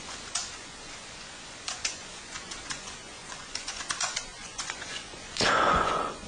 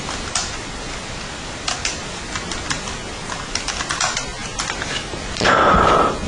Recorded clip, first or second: second